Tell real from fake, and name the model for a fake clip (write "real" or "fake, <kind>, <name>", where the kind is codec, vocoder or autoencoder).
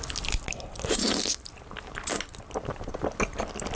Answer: real